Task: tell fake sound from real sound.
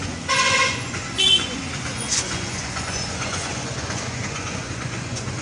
fake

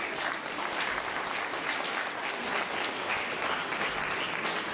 real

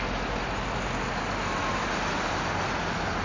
real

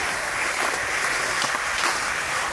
real